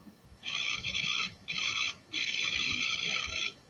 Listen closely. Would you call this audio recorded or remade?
remade